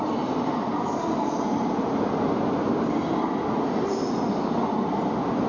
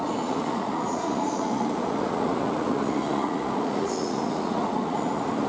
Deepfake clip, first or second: second